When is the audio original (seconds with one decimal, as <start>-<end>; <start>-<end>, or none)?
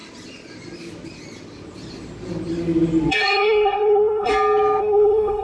0.0-3.1; 4.3-4.8